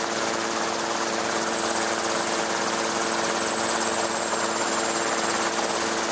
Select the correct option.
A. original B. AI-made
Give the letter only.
A